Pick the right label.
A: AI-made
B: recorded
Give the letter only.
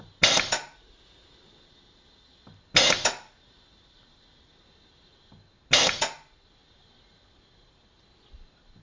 B